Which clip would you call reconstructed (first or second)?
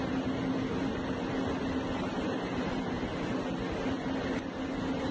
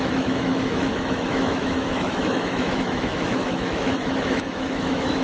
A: second